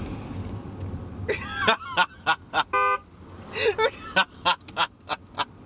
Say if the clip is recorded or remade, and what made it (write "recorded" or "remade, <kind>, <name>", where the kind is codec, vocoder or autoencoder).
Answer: recorded